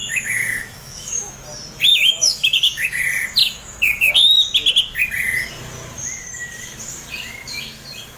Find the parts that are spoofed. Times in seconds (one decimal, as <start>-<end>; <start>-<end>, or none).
0.0-1.3; 1.9-3.0; 3.4-4.1